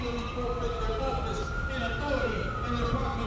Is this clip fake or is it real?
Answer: real